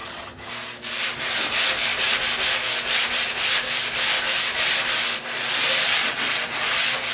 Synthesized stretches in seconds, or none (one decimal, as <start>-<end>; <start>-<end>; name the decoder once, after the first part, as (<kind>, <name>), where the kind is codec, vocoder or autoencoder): 0.0-0.5 (vocoder, HiFi-GAN)